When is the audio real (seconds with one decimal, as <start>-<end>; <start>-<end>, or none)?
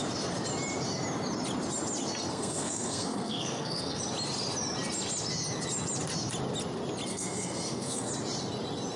0.0-2.3; 4.0-7.1; 8.1-9.0